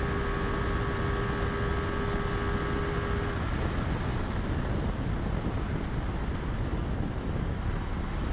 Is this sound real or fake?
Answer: real